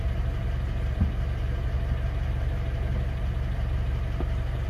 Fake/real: real